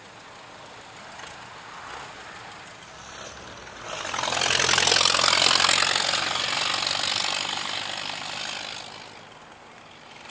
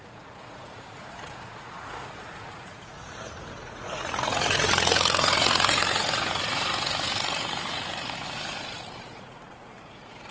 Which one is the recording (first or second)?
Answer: first